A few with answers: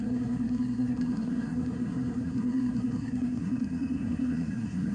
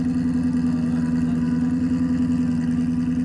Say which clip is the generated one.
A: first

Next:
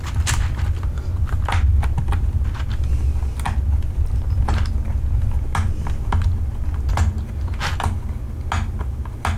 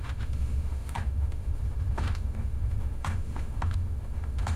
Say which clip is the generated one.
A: second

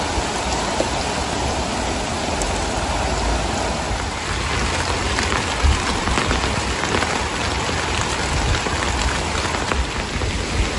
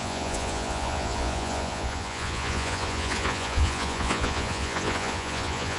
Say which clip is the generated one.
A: second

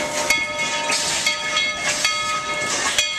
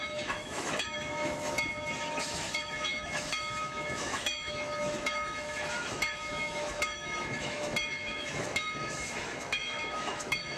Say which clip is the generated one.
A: second